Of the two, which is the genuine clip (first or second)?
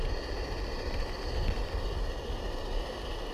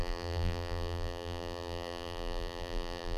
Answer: first